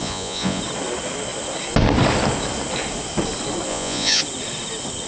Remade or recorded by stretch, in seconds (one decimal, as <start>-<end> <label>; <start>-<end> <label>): 0.0-0.6 remade; 0.6-3.7 recorded; 3.7-4.2 remade; 4.2-5.1 recorded